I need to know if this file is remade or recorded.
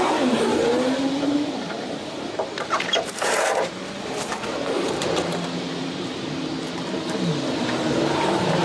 remade